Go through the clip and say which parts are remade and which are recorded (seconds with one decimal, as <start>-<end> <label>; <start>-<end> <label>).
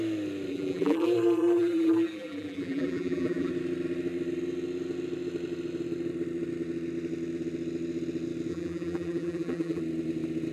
0.0-0.5 recorded; 0.5-3.5 remade; 3.5-8.5 recorded; 8.5-9.8 remade; 9.8-10.5 recorded